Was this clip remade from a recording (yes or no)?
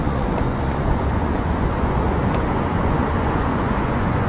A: yes